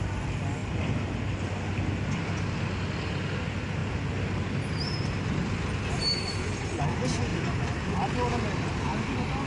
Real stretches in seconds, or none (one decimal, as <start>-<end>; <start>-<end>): 0.0-0.6; 1.7-9.5